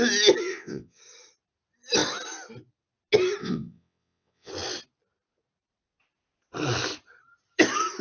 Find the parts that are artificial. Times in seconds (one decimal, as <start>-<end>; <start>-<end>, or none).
0.5-1.0; 3.4-4.5